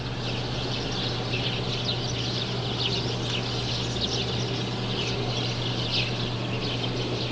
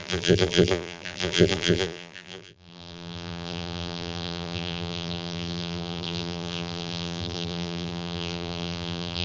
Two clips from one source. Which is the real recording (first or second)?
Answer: first